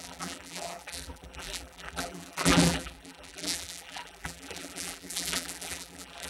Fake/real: fake